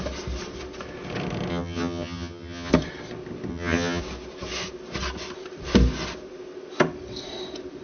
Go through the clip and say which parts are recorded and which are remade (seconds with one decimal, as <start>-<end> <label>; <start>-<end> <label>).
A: 0.0-1.5 recorded; 1.5-2.7 remade; 2.7-3.5 recorded; 3.5-4.0 remade; 4.0-7.8 recorded